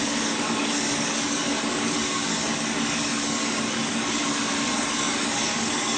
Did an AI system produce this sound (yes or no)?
yes